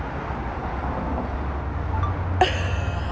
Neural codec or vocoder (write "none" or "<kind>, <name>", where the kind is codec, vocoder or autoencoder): none